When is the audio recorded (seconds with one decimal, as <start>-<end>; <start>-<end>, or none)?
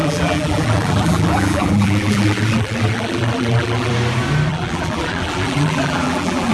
3.9-4.5